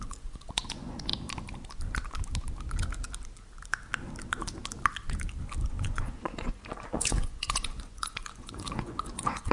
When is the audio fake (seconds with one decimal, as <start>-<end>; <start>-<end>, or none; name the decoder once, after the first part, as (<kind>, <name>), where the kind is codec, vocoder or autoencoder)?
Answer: 0.0-1.1 (vocoder, Vocos); 5.7-9.5